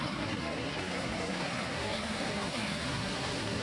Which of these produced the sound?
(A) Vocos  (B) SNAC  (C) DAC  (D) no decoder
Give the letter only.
B